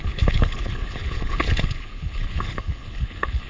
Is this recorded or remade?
remade